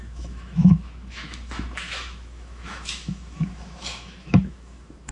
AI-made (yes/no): yes